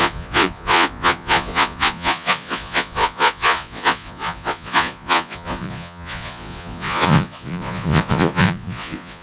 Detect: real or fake fake